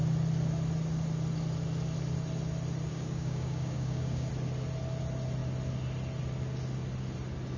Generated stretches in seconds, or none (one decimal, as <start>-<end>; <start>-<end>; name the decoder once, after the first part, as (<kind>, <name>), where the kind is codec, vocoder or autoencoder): 2.9-4.3 (codec, DAC)